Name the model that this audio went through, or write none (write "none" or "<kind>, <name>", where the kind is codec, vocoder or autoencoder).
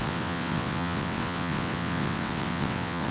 vocoder, WaveNeXt